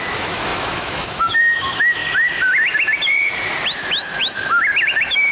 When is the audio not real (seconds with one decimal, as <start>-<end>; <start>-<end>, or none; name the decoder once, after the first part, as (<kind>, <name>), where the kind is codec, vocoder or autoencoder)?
0.0-2.0 (autoencoder, DAC-VAE); 3.8-5.3